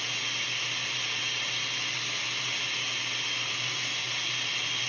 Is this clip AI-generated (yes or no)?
no